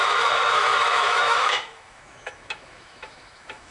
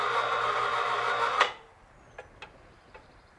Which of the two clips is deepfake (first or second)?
first